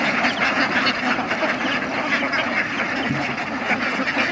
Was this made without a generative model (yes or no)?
yes